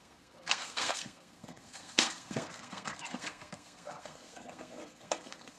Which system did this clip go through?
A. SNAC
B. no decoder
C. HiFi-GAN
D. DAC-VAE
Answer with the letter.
A